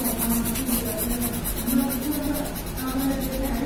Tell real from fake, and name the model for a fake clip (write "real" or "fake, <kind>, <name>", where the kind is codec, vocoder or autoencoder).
real